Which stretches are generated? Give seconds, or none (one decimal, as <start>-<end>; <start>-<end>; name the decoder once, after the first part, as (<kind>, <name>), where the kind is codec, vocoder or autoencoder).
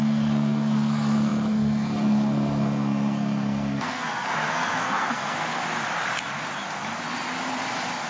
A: 0.0-5.6 (codec, SNAC)